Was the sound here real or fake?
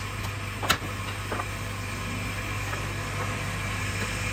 real